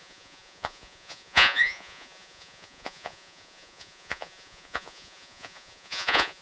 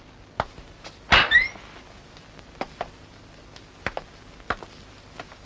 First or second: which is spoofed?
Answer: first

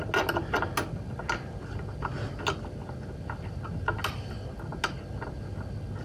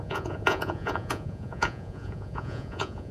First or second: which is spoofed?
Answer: second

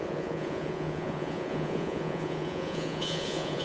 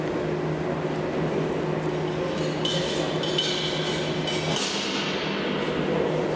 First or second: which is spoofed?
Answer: first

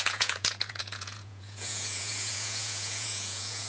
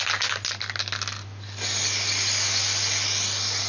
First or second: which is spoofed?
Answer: first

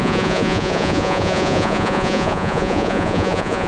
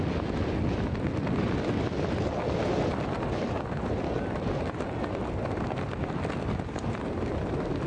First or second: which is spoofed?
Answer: first